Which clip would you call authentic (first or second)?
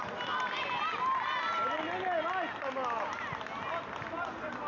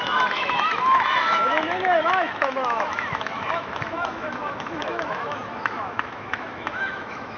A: first